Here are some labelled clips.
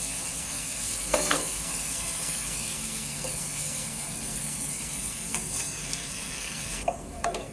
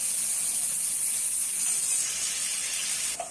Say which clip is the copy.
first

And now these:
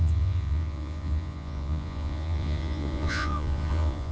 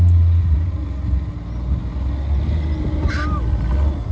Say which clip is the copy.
first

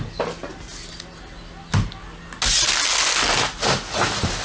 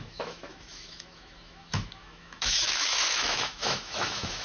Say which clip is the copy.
second